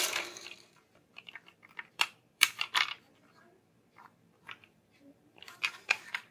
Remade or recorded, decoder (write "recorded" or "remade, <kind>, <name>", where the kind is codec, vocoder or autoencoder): remade, vocoder, BigVGAN v2